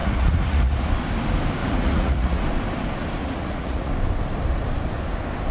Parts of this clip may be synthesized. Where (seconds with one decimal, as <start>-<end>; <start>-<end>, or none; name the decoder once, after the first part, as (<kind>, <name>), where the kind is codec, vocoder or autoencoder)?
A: 0.0-0.9 (vocoder, Vocos); 1.6-2.4; 3.2-3.9